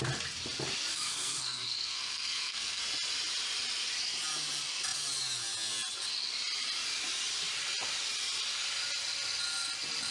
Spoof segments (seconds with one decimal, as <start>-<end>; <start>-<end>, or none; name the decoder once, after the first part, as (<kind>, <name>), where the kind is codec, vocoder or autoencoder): 0.9-2.8 (codec, SNAC)